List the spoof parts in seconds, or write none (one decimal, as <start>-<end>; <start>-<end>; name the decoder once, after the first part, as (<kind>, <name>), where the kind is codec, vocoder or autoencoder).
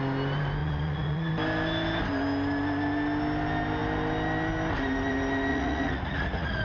0.6-1.3 (vocoder, Vocos); 5.5-6.6